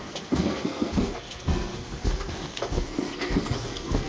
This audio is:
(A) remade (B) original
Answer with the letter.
A